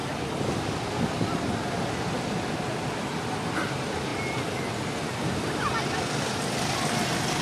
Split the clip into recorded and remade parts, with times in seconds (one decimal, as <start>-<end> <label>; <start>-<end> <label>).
0.0-7.4 recorded